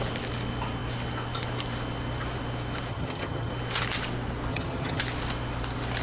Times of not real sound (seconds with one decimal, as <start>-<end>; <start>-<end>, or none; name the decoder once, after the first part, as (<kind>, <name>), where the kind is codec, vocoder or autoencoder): 2.9-3.5 (vocoder, HiFi-GAN); 4.5-5.0